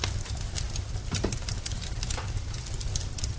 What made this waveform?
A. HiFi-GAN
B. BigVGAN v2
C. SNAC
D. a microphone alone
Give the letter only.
D